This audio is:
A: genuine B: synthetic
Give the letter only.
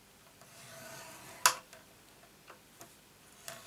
A